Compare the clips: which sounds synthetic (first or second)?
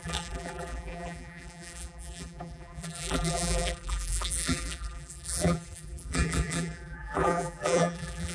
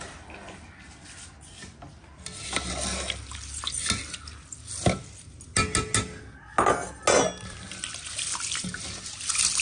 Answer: first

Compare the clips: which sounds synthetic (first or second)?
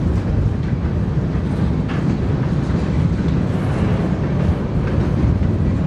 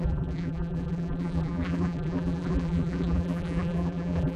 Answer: second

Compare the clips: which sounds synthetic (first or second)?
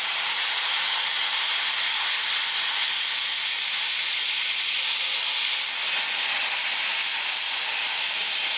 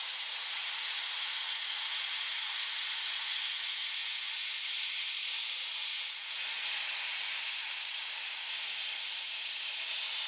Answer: second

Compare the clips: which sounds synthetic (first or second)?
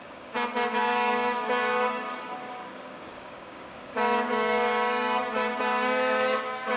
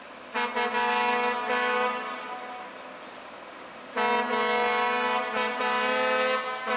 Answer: first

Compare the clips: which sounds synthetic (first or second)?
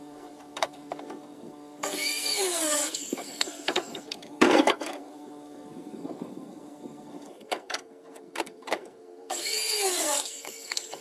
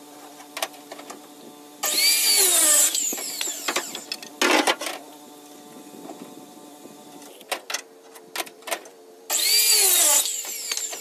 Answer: first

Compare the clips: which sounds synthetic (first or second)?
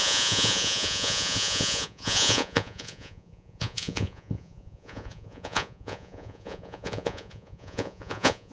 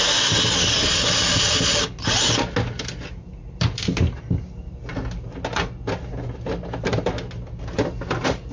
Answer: first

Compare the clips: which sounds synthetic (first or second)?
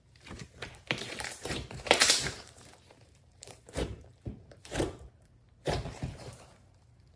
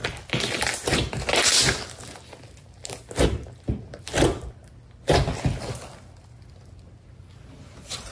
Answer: first